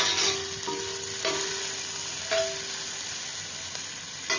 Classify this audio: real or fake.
real